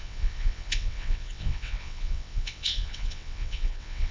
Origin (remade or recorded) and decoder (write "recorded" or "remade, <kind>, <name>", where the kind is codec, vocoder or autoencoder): remade, vocoder, WaveNeXt